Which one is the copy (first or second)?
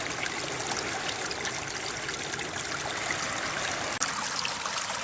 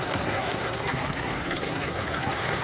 second